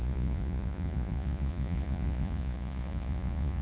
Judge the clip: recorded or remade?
remade